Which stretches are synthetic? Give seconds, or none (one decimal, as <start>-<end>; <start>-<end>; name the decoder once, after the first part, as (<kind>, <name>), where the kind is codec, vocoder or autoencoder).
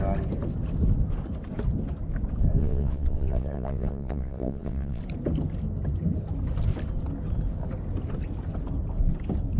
2.6-5.0 (vocoder, WaveNeXt)